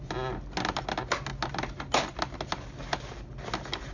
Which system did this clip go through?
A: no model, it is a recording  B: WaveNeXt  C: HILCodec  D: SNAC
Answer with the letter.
A